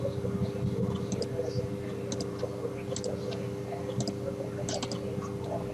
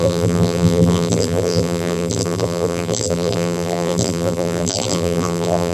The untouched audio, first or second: first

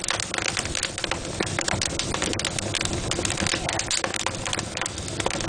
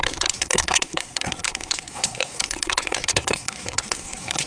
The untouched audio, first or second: first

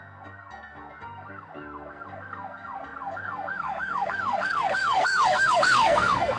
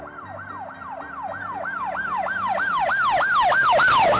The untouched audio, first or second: second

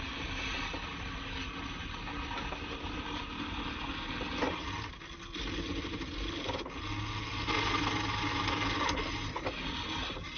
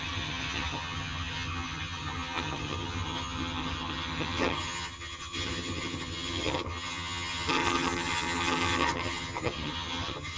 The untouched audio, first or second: first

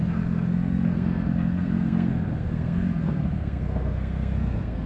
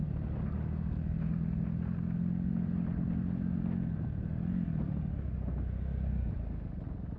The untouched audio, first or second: second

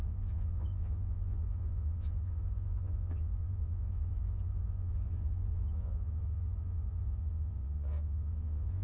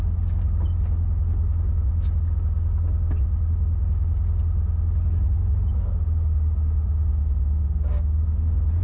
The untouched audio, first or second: second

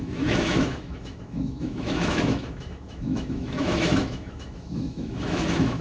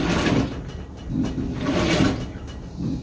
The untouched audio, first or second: second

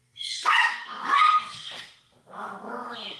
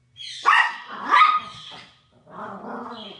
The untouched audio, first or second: second